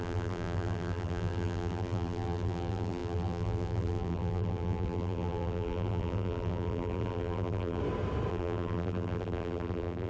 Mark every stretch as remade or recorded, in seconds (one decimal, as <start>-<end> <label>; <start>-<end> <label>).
0.0-7.8 remade; 7.8-8.3 recorded; 8.3-10.1 remade